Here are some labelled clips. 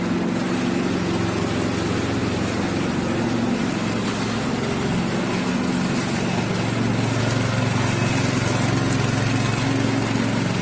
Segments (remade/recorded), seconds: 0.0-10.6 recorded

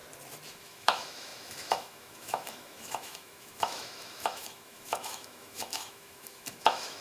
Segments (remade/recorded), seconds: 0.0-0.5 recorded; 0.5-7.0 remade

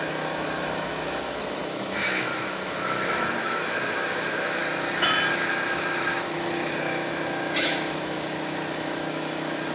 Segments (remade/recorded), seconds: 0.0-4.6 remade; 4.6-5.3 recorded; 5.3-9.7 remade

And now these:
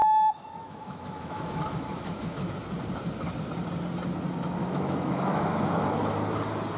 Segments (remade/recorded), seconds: 0.0-2.5 remade; 2.5-4.6 recorded; 4.6-5.8 remade; 5.8-6.8 recorded

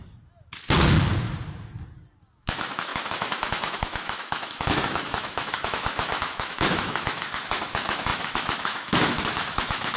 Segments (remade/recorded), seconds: 0.0-2.4 recorded; 2.4-10.0 remade

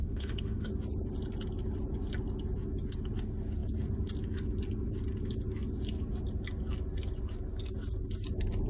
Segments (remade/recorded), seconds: 0.0-0.7 remade; 0.7-8.7 recorded

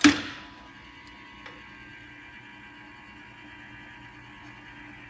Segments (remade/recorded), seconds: 0.0-5.1 recorded

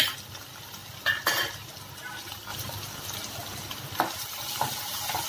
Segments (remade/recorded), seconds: 0.0-5.3 recorded